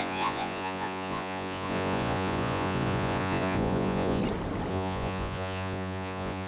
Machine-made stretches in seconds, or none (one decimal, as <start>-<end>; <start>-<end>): 0.0-4.2; 4.7-6.5